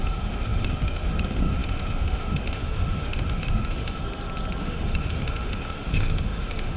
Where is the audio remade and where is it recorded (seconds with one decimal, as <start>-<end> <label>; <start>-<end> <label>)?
0.0-4.0 remade; 4.0-4.6 recorded; 4.6-6.8 remade